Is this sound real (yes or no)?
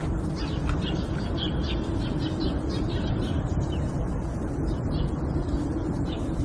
no